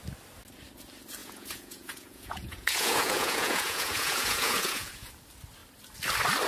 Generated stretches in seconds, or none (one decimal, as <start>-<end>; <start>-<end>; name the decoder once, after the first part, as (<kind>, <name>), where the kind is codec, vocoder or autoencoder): 1.2-5.1 (vocoder, Vocos)